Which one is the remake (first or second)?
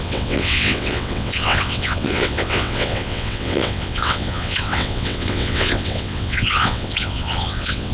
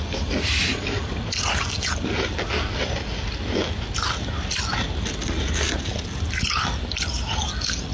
first